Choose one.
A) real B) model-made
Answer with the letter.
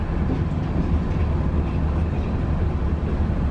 A